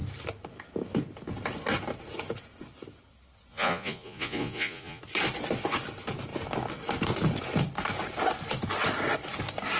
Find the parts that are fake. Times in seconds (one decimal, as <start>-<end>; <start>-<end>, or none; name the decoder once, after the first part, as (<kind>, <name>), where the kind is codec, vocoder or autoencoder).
3.5-5.0 (vocoder, Vocos)